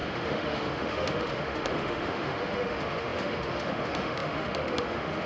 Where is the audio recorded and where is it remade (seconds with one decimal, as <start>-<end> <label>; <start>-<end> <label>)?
0.0-5.3 remade